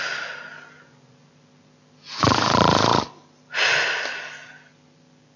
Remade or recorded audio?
recorded